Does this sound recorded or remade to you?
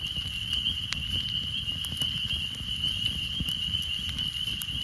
remade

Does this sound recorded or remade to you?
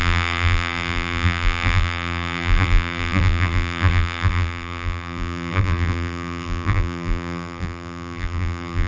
remade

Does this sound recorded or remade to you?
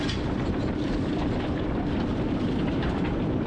remade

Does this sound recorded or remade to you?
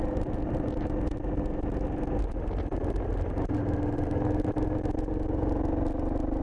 recorded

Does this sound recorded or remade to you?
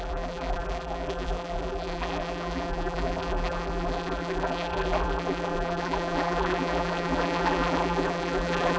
remade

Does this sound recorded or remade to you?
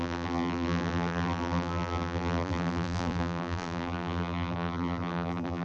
remade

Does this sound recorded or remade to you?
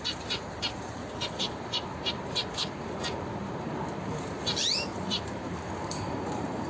remade